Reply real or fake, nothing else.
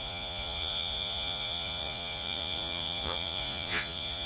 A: fake